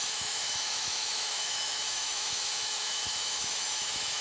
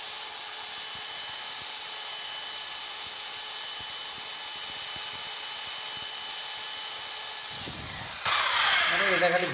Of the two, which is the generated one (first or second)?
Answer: first